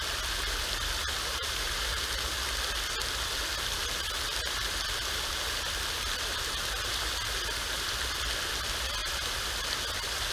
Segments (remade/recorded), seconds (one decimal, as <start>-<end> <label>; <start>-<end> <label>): 0.0-1.3 recorded; 1.3-2.3 remade; 2.3-9.0 recorded; 9.0-9.5 remade; 9.5-10.3 recorded